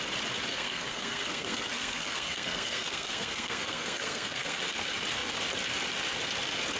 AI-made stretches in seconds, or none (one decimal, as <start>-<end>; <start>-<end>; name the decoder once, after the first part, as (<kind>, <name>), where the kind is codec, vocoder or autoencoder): 0.5-4.6 (codec, SNAC)